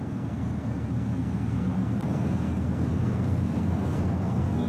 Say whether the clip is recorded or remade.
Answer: remade